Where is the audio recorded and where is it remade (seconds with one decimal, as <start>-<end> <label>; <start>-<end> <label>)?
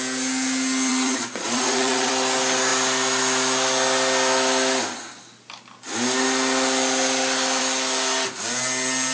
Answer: 0.0-0.9 recorded; 0.9-2.1 remade; 2.1-9.1 recorded